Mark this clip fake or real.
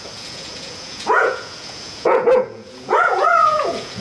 fake